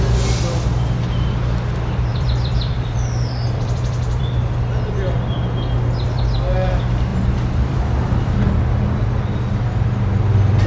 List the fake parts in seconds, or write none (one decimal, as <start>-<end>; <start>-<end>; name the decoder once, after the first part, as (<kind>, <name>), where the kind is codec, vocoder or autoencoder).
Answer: 2.1-4.3 (vocoder, BigVGAN v2); 7.1-8.4